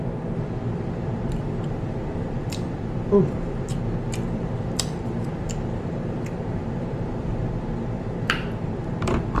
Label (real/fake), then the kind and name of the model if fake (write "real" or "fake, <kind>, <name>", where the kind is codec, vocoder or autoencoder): fake, vocoder, BigVGAN v2